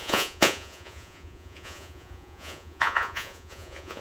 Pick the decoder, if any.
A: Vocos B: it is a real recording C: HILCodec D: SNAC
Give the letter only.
A